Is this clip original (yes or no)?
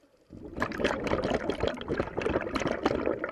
yes